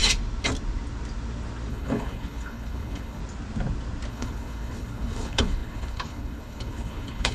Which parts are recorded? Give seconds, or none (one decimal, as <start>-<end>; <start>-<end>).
0.0-1.7; 3.2-4.1

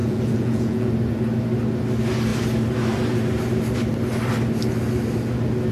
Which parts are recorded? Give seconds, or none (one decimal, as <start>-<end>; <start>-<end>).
0.9-5.7

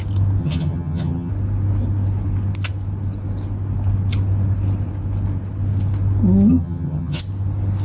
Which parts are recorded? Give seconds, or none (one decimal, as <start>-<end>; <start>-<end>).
0.0-0.4; 1.3-6.5; 7.2-7.8

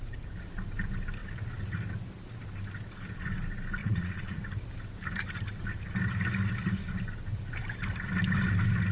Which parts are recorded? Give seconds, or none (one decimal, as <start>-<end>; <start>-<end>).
0.0-3.8; 4.4-8.9

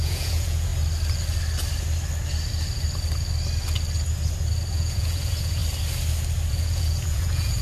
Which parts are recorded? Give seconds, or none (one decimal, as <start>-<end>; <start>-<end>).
0.7-4.7; 5.6-6.5